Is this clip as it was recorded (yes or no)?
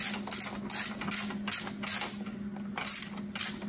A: yes